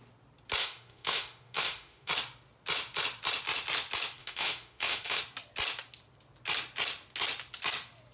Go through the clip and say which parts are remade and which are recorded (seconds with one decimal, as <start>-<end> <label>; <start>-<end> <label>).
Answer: 0.0-0.6 recorded; 0.6-2.1 remade; 2.1-4.2 recorded; 4.2-5.2 remade; 5.2-8.1 recorded